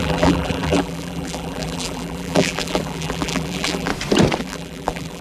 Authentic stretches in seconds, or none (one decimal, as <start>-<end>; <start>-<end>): 3.9-4.4